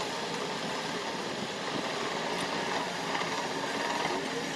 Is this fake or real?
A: real